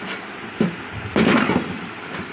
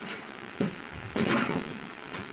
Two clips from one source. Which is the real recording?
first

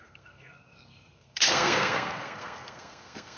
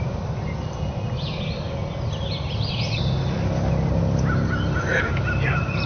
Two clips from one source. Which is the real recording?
second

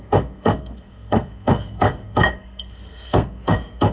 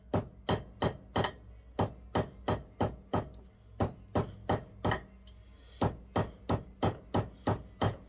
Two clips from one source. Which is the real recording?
second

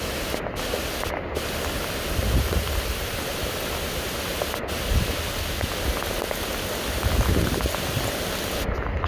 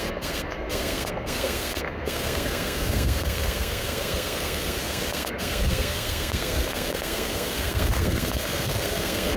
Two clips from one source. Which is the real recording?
first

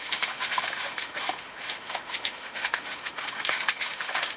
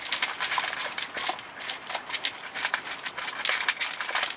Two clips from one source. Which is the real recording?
second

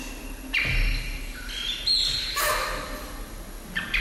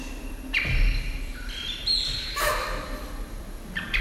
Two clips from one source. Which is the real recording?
first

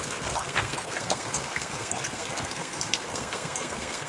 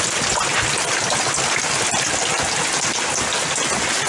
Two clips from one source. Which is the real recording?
second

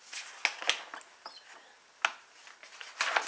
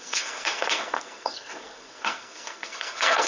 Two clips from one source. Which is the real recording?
first